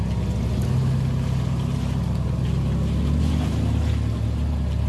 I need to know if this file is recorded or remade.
recorded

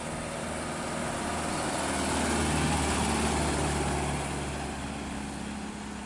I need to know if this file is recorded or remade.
recorded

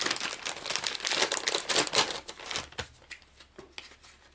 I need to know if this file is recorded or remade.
recorded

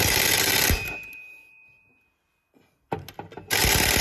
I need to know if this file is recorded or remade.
recorded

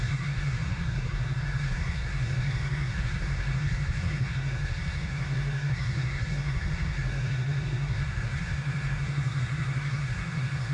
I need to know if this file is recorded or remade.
remade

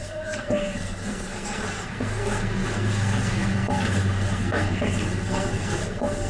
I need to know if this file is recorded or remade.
remade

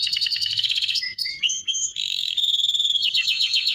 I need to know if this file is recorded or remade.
remade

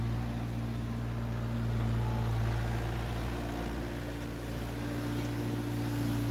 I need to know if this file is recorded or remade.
recorded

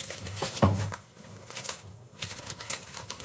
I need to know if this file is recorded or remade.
remade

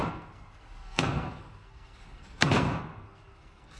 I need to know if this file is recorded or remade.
remade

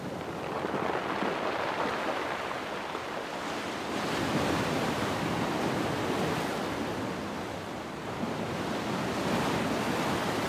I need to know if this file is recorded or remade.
recorded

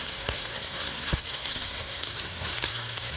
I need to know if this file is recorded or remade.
remade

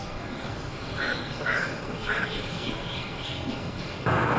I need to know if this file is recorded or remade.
remade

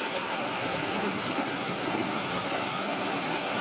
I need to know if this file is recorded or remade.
remade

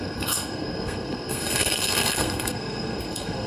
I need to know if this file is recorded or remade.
remade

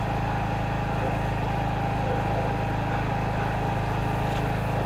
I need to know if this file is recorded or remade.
recorded